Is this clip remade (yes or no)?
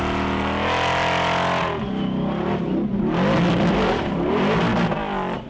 no